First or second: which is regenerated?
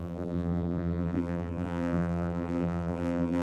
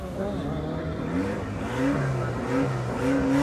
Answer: first